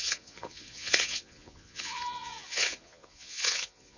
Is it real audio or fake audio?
fake